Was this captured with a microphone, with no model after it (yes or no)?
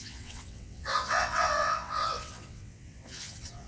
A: no